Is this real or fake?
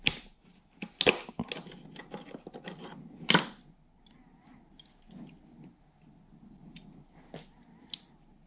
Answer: real